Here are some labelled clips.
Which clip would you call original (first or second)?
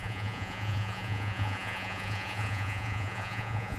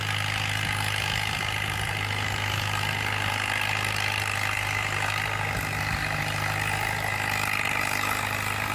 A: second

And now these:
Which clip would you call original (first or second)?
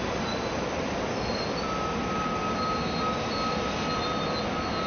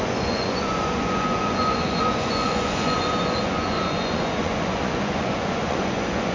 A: first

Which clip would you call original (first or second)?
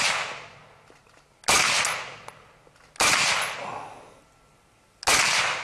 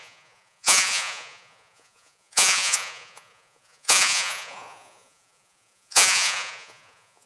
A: first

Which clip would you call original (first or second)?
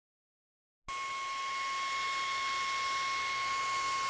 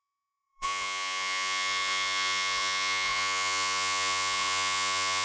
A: first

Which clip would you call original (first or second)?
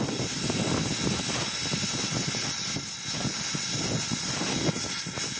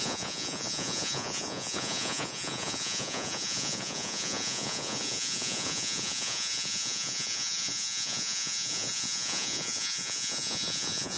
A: first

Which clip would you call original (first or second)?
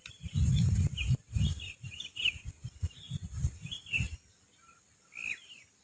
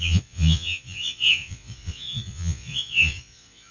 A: first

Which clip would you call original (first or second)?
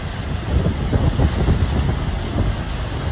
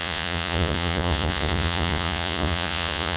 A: first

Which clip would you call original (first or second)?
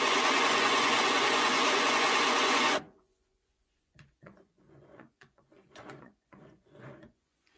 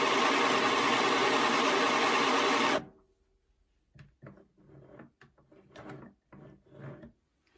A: second